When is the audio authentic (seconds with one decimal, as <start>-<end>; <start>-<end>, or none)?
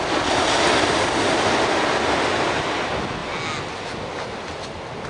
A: 0.0-5.1